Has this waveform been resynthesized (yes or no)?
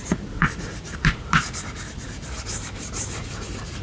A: yes